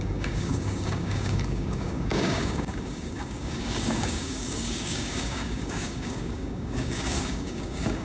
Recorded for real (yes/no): no